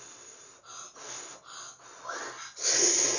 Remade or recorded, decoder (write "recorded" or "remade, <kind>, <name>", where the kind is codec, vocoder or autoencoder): recorded